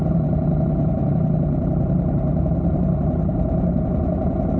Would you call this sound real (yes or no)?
no